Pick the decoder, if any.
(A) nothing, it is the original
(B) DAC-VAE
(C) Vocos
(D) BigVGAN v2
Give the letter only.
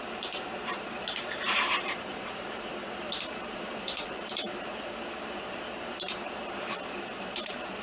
D